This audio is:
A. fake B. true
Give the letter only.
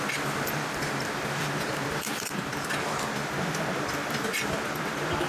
A